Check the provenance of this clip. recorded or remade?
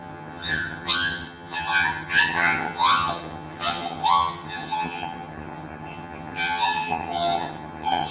remade